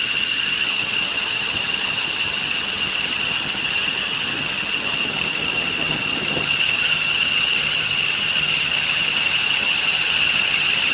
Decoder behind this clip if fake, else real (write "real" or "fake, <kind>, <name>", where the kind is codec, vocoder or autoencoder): fake, vocoder, HiFi-GAN